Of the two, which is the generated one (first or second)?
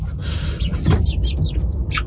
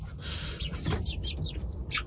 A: second